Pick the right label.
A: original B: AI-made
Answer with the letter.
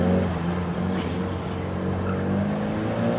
A